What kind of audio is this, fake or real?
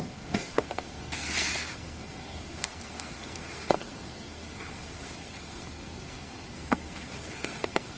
fake